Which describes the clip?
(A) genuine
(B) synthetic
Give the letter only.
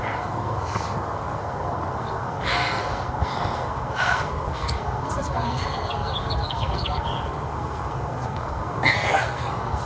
B